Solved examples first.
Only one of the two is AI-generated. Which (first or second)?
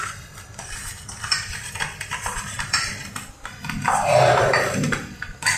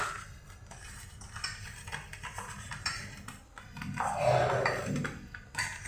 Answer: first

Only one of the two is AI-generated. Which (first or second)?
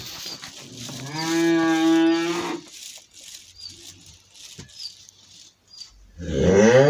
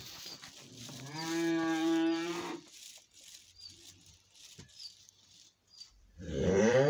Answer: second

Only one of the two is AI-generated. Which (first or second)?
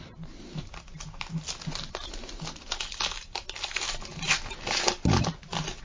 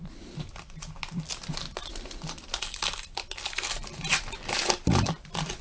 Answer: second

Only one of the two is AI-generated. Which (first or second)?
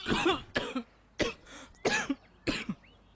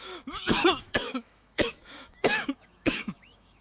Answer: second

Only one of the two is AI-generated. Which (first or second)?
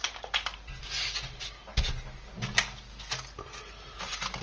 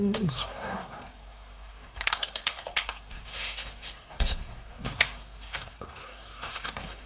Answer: second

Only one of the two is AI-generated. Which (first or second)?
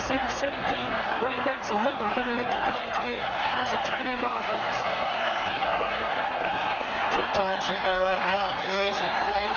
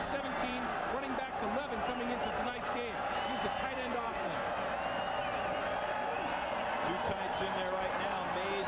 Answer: first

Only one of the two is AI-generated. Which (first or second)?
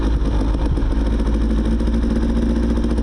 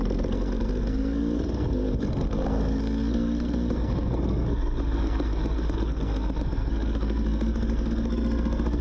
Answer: second